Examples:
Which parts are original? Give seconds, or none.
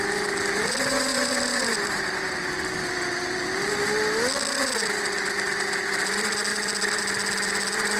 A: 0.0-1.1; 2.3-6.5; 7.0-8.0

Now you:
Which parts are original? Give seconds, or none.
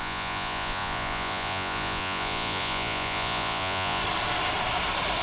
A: 4.0-5.2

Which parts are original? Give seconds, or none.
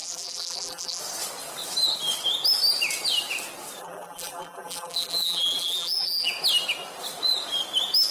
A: 1.0-3.8; 6.3-8.1